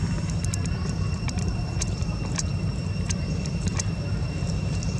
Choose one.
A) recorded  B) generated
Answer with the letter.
B